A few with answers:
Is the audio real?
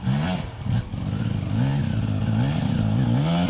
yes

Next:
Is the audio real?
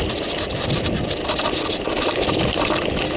yes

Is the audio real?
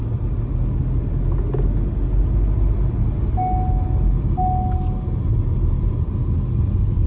yes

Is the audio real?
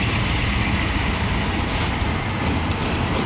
yes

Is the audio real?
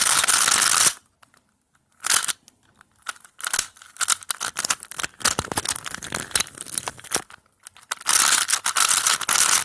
yes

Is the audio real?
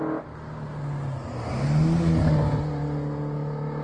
yes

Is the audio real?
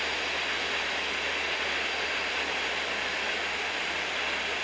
yes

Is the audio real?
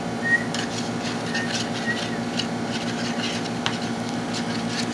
yes